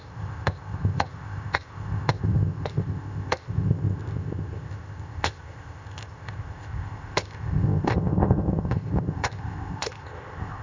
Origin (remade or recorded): remade